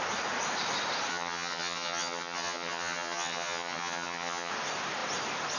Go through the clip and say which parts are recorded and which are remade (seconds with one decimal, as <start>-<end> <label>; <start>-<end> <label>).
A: 0.0-1.1 recorded; 1.1-4.5 remade; 4.5-5.6 recorded